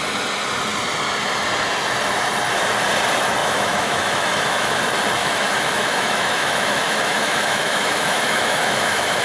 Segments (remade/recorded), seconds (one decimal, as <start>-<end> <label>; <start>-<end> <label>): 0.0-3.4 recorded; 3.4-4.8 remade; 4.8-5.2 recorded; 5.2-9.2 remade